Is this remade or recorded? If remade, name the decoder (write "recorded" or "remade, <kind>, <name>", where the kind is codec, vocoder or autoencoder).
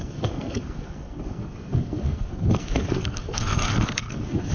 remade, codec, SNAC